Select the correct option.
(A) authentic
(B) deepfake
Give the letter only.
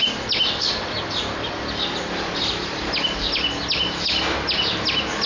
A